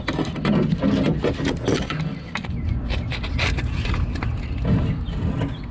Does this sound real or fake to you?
real